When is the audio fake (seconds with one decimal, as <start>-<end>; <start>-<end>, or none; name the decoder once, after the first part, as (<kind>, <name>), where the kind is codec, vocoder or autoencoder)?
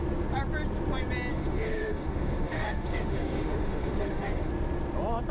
1.3-4.5 (autoencoder, DAC-VAE)